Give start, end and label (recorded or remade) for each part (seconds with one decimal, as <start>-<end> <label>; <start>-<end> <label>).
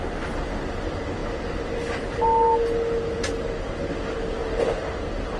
0.0-5.4 recorded